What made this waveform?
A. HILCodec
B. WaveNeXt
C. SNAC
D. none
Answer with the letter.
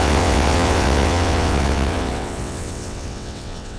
B